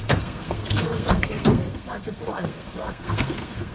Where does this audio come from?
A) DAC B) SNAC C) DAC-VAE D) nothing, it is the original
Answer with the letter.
B